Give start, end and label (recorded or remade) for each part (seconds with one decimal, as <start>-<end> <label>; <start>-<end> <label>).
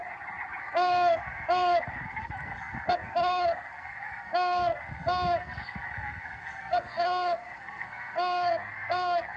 0.0-0.6 recorded; 0.6-9.4 remade